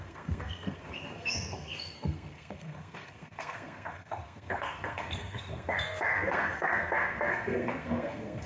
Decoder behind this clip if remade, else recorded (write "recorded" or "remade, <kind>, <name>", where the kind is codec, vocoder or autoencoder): remade, codec, SNAC